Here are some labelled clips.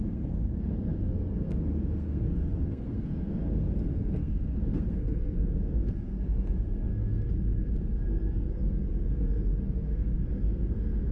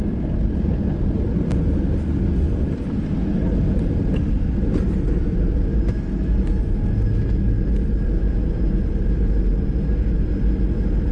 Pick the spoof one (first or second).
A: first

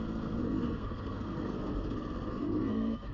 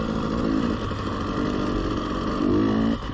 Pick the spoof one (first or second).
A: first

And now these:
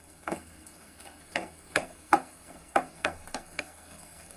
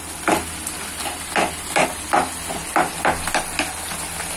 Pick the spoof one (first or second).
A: first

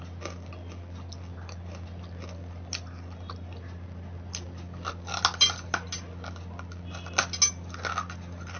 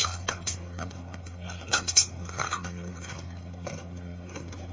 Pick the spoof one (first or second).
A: second